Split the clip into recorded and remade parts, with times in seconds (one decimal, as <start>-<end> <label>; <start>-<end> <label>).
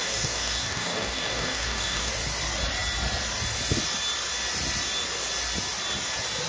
0.0-2.1 remade; 2.1-6.5 recorded